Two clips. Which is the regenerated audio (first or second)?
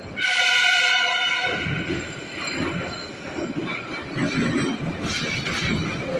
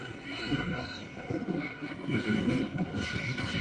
second